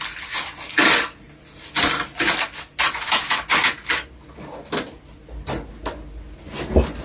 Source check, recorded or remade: recorded